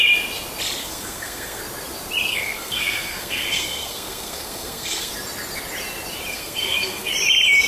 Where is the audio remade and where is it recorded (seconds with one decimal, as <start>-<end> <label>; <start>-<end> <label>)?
0.0-0.8 recorded; 0.8-1.6 remade; 1.6-2.3 recorded; 2.3-5.1 remade; 5.1-6.3 recorded; 6.3-7.1 remade; 7.1-7.7 recorded